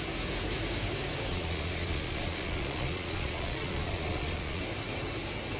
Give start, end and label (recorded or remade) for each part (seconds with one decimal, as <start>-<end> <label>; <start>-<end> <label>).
0.0-1.3 recorded; 1.3-4.6 remade; 4.6-5.6 recorded